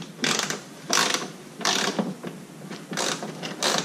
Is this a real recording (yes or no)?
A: no